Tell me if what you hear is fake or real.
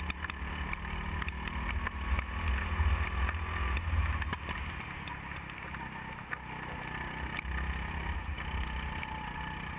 real